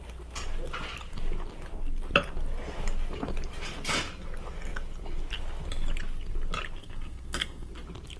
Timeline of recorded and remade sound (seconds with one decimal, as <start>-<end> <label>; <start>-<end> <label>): 0.0-6.8 recorded; 6.8-7.7 remade; 7.7-8.2 recorded